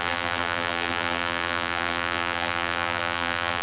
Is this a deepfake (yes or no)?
yes